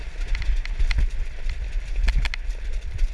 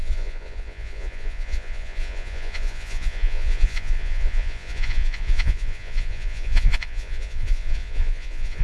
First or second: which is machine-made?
second